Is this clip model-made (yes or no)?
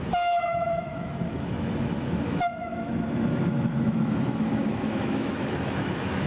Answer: yes